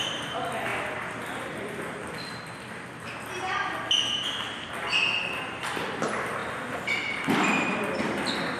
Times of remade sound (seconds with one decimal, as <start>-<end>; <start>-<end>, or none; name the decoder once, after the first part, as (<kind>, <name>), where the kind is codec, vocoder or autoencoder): 6.4-7.7 (vocoder, BigVGAN v2)